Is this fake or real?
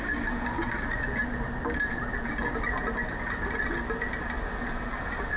real